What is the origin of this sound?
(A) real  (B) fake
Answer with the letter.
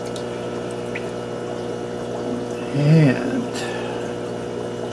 A